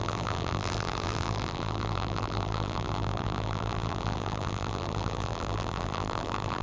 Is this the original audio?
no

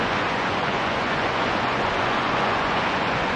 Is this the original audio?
no